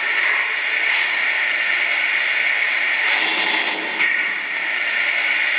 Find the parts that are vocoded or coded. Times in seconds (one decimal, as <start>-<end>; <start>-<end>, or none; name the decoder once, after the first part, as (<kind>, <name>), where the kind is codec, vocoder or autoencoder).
none